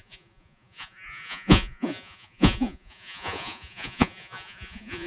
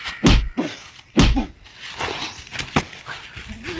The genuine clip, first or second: second